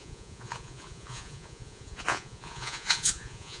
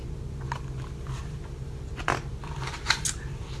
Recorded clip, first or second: second